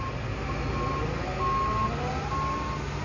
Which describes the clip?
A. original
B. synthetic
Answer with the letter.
A